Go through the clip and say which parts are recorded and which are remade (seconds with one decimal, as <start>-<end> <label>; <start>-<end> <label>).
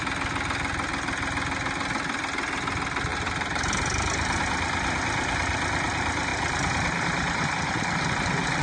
0.0-3.1 recorded; 3.1-4.4 remade; 4.4-6.3 recorded; 6.3-7.5 remade; 7.5-8.6 recorded